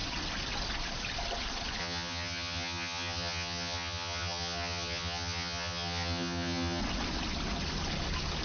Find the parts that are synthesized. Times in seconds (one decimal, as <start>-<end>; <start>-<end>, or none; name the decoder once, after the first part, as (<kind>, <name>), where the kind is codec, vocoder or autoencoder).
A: 1.8-6.8 (vocoder, HiFi-GAN)